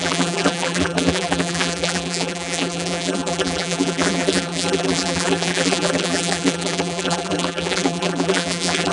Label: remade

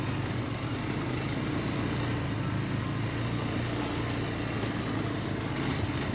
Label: recorded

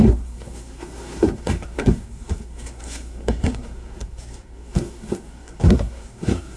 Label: remade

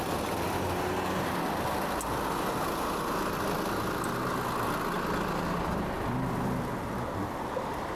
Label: recorded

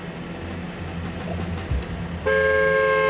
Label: recorded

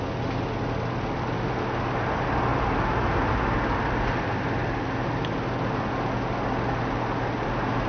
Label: recorded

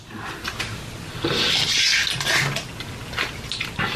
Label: recorded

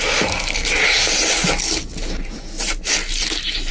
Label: recorded